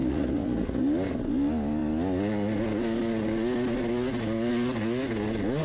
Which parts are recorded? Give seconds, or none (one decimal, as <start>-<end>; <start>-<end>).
0.8-5.6